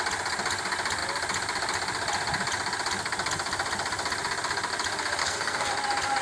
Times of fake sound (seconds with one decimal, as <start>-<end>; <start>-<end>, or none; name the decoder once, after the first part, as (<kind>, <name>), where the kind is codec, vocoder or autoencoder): 5.2-5.7 (codec, SNAC)